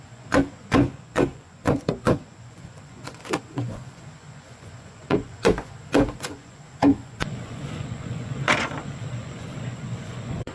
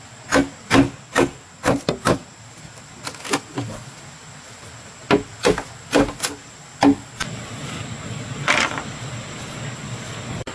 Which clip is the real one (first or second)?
second